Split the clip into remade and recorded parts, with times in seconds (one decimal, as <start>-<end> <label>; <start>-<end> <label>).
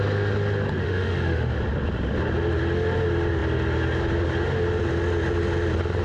0.0-0.8 recorded; 0.8-1.5 remade; 1.5-6.0 recorded